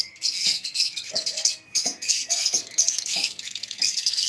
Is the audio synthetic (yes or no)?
yes